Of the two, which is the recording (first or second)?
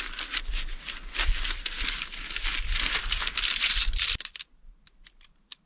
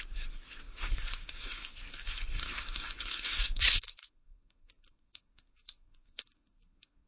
first